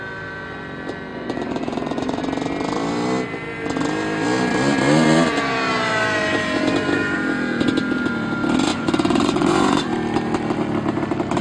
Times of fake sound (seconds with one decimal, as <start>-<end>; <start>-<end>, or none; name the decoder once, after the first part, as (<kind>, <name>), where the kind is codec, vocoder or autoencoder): 1.1-2.2 (vocoder, Vocos); 8.7-9.8